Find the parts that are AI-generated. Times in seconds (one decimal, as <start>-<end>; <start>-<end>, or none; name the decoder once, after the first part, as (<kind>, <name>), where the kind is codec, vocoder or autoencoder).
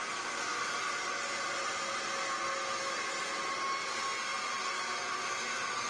none